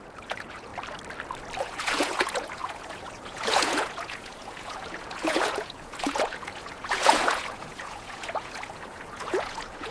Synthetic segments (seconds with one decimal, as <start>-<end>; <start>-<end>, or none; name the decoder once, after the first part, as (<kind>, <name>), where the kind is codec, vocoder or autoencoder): 0.0-0.7 (vocoder, Vocos); 1.6-9.9